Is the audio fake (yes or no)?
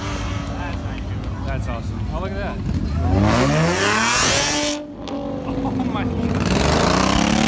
no